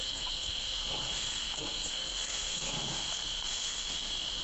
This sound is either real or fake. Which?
fake